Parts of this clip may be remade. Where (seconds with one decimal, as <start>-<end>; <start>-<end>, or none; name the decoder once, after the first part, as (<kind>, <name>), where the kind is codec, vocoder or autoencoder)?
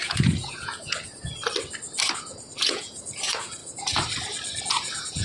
0.0-1.4 (vocoder, Vocos); 2.0-3.6; 4.7-5.2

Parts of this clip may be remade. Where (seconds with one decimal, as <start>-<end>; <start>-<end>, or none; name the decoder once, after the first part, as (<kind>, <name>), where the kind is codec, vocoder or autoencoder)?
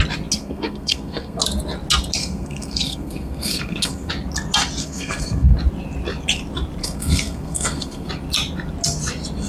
0.4-1.4 (codec, SNAC); 2.2-4.1; 4.8-5.6; 6.8-8.1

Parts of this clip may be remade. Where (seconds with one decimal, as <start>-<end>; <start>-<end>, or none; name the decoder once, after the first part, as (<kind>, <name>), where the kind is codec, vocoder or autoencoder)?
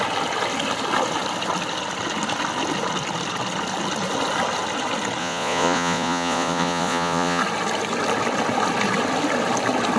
5.2-7.4 (vocoder, Vocos)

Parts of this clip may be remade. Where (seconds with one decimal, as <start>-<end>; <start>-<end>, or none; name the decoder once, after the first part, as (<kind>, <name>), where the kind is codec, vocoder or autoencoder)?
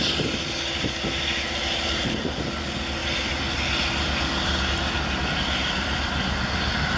none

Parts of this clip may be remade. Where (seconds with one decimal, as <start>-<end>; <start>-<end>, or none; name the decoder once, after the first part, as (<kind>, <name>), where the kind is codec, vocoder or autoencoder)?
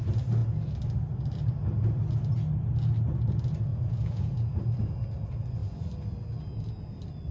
3.7-4.4 (vocoder, Vocos)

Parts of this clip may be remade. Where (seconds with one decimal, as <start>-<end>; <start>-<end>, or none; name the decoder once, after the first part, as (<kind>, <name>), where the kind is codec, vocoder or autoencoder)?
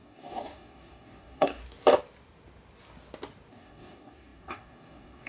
0.0-1.6 (codec, DAC); 3.5-5.3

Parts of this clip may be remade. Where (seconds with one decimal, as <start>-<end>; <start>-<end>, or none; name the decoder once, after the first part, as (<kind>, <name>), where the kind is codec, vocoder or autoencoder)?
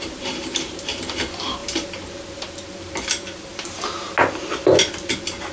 none